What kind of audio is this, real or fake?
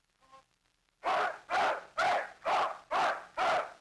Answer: real